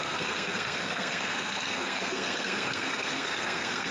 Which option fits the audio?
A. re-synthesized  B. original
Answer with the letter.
A